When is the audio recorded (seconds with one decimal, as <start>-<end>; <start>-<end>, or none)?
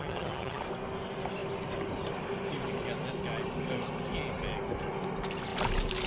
0.6-6.1